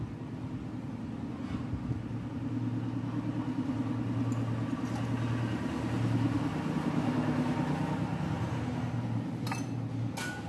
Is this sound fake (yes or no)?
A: no